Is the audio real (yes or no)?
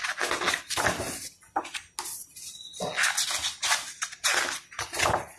yes